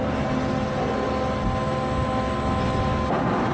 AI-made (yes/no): no